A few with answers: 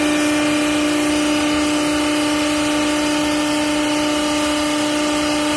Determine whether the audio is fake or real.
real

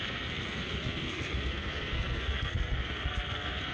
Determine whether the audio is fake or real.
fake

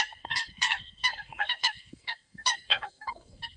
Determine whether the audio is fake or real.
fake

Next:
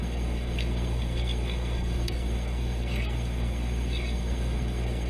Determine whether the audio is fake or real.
fake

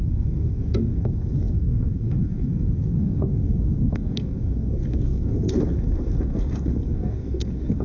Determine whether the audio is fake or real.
fake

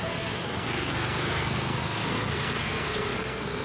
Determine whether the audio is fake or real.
fake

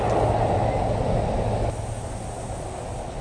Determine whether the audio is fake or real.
real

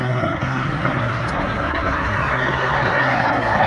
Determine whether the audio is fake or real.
fake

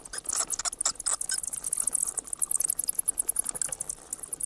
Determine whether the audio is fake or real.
real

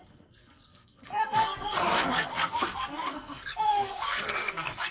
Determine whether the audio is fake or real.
fake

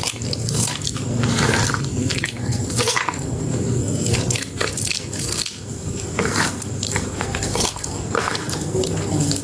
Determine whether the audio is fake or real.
fake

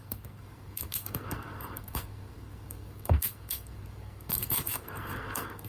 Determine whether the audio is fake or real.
fake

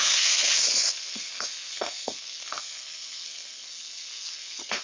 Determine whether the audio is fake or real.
fake